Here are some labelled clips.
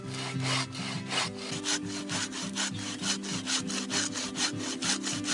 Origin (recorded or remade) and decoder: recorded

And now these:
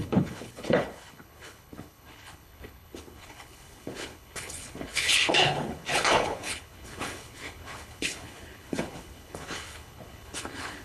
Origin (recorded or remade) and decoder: remade, codec, HILCodec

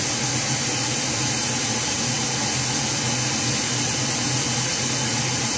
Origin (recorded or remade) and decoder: recorded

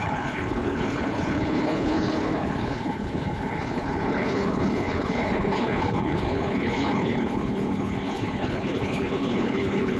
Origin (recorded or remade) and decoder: remade, codec, HILCodec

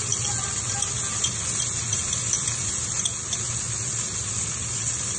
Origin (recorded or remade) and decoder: recorded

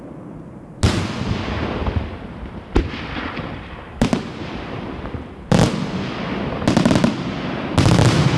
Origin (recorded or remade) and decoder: recorded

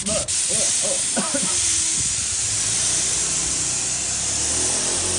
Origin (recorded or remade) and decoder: recorded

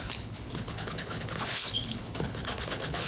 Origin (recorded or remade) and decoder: remade, codec, HILCodec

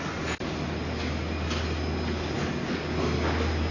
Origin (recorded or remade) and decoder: recorded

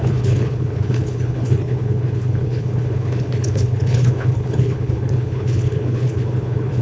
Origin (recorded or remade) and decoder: remade, codec, HILCodec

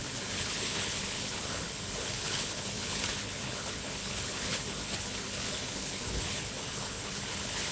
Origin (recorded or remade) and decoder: remade, codec, HILCodec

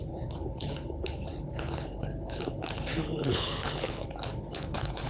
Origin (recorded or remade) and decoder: remade, codec, HILCodec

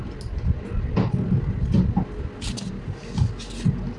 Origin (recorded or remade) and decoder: recorded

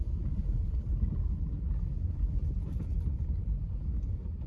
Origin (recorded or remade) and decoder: recorded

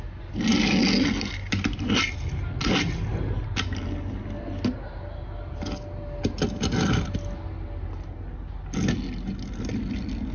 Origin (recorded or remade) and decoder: recorded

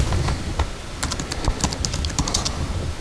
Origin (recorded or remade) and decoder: recorded